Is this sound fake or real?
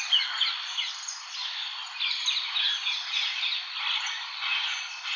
real